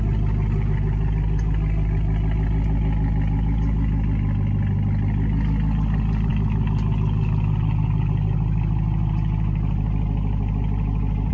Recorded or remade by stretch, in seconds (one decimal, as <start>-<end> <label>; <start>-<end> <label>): 0.0-11.3 recorded